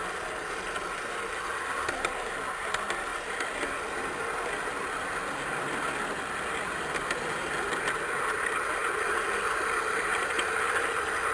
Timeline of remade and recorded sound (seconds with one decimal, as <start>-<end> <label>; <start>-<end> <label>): 0.0-11.3 recorded